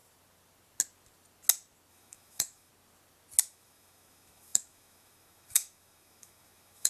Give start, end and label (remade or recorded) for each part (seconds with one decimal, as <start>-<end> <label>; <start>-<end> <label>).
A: 0.0-1.9 recorded; 1.9-2.7 remade; 2.7-3.5 recorded; 3.5-6.9 remade